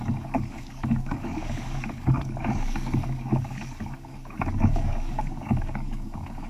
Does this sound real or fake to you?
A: fake